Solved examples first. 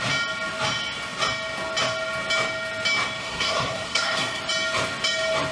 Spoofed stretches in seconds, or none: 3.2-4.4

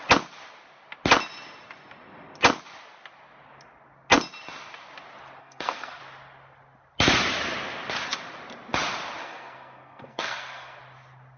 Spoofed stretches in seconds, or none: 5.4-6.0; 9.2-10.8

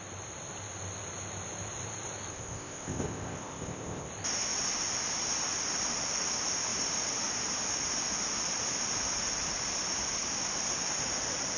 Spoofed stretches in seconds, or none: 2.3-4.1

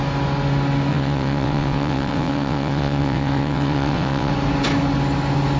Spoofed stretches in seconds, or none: 0.9-4.3

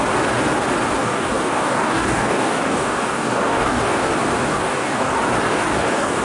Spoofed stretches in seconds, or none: 1.0-4.1; 4.5-5.1; 5.5-6.2